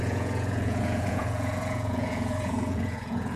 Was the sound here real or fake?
fake